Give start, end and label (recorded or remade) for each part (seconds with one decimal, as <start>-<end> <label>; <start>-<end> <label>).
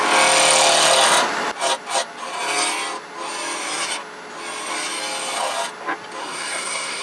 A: 0.0-6.2 recorded; 6.2-7.0 remade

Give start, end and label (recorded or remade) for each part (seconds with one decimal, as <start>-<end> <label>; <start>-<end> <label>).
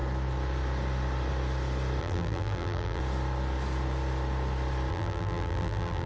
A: 0.0-2.0 recorded; 2.0-3.0 remade; 3.0-4.9 recorded; 4.9-6.1 remade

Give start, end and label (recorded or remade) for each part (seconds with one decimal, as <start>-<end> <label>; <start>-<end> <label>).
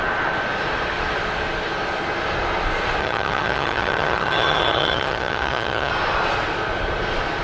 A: 0.0-3.0 recorded; 3.0-5.9 remade; 5.9-7.4 recorded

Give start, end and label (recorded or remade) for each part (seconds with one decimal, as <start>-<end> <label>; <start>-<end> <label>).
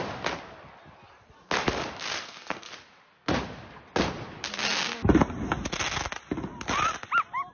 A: 0.0-2.2 recorded; 2.2-2.7 remade; 2.7-7.5 recorded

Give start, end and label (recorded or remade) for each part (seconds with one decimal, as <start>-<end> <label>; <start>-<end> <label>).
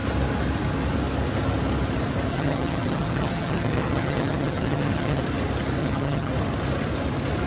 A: 0.0-2.3 recorded; 2.3-5.2 remade; 5.2-5.8 recorded; 5.8-6.3 remade; 6.3-7.5 recorded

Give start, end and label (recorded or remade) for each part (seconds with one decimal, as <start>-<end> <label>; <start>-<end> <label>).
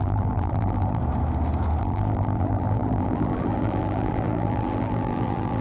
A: 0.0-1.0 remade; 1.0-1.8 recorded; 1.8-5.6 remade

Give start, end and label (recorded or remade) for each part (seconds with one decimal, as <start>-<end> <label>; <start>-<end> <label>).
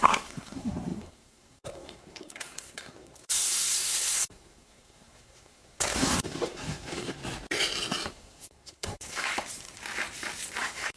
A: 0.0-7.2 remade; 7.2-8.1 recorded; 8.1-9.3 remade; 9.3-10.6 recorded; 10.6-11.0 remade